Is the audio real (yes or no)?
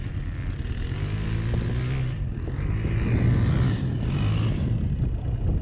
yes